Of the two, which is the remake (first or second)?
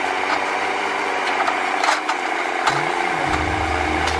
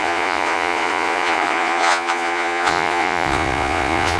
second